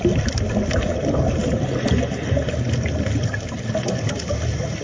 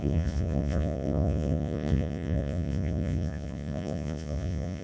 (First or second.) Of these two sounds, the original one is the first